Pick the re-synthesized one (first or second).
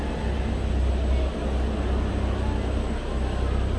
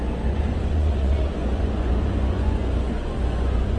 second